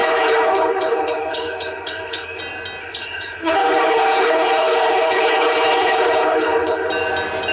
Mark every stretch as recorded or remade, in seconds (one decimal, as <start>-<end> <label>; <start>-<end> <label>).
0.0-2.4 remade; 2.4-2.8 recorded; 2.8-6.9 remade; 6.9-7.5 recorded